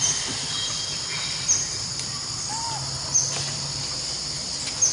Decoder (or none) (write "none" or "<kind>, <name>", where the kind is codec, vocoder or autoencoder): none